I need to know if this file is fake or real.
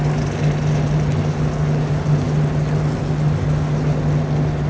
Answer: real